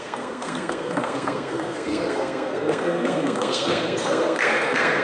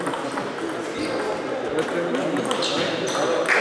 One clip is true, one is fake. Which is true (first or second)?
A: second